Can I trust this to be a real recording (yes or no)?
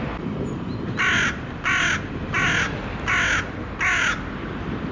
yes